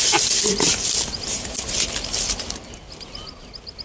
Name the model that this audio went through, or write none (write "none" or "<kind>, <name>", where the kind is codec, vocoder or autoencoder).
none